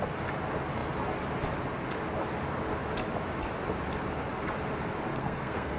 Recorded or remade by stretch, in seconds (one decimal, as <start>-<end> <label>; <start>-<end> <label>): 0.0-5.1 recorded; 5.1-5.8 remade